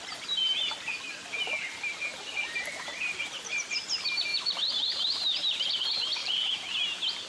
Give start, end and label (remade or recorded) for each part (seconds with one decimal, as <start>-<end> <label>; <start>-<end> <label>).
0.0-2.1 recorded; 2.1-3.8 remade; 3.8-4.3 recorded; 4.3-5.5 remade; 5.5-6.2 recorded; 6.2-7.3 remade